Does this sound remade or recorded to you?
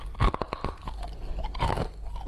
recorded